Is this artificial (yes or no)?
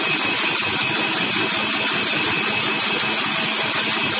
no